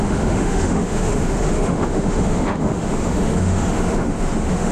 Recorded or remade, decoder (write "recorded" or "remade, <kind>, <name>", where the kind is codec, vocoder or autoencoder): remade, autoencoder, DAC-VAE